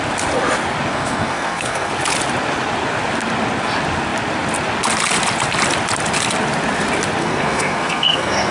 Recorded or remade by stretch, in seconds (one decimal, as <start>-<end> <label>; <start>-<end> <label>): 0.0-0.9 recorded; 0.9-1.9 remade; 1.9-7.2 recorded; 7.2-8.5 remade